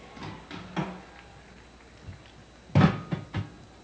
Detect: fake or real real